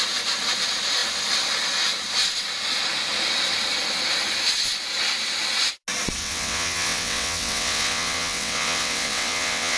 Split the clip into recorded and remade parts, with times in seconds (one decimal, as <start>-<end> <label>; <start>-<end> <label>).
0.0-6.2 recorded; 6.2-9.8 remade